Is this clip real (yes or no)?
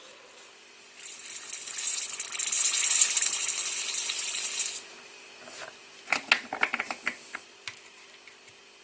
yes